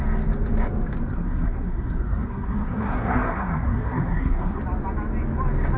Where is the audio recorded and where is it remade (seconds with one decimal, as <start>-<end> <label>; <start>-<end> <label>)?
0.0-1.1 recorded; 1.1-4.6 remade; 4.6-5.8 recorded